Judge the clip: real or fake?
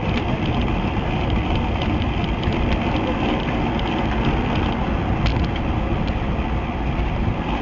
real